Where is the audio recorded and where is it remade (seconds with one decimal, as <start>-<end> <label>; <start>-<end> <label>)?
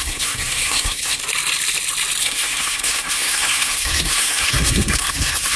0.0-1.2 remade; 1.2-2.2 recorded; 2.2-5.6 remade